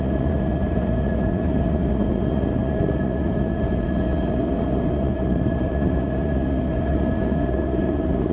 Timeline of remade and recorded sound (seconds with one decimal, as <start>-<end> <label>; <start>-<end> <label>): 0.0-8.3 remade